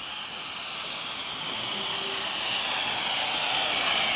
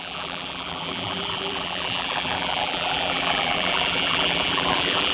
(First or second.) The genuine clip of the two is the first